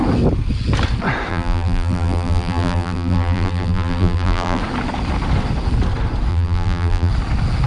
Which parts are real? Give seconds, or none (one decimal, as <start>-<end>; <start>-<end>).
0.0-1.3; 4.6-6.3; 7.1-7.7